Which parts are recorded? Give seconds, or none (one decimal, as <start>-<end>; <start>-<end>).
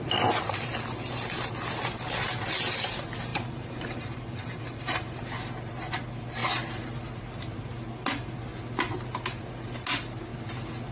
0.0-3.3; 5.2-10.9